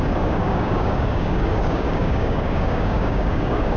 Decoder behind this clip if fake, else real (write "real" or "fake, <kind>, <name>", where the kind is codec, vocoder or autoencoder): fake, codec, DAC